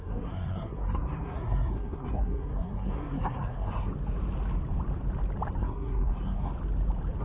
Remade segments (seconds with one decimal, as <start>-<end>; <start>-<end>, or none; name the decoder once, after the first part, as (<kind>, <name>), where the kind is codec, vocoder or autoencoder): 0.0-3.9 (codec, SNAC); 5.6-6.5